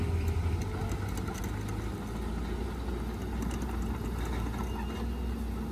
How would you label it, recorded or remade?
recorded